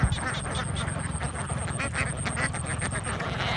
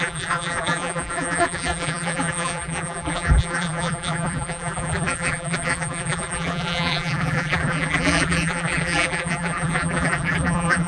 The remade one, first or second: second